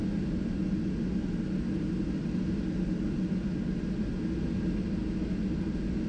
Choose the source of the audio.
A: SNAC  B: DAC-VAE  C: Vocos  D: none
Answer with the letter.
D